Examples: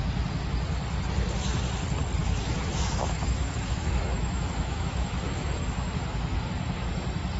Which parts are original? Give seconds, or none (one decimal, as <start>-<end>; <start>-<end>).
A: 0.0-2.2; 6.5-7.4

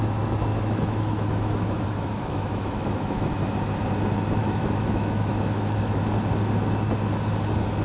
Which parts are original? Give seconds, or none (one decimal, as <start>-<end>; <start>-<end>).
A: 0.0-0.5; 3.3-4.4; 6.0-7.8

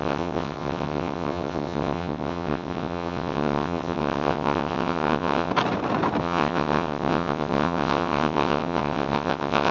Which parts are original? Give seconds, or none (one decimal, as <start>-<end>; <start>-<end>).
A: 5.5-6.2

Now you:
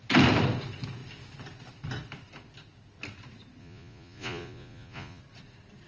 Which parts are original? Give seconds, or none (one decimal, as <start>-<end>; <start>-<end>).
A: 0.0-3.6; 5.2-5.9

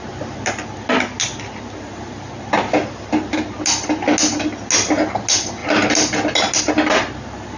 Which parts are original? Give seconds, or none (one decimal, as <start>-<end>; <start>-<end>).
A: 0.0-7.6

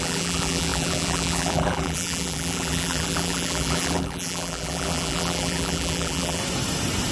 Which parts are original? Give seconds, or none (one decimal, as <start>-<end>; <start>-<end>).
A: 6.4-7.1

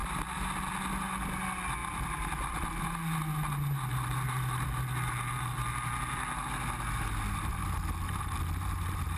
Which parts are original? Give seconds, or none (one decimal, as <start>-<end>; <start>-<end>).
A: 0.0-9.2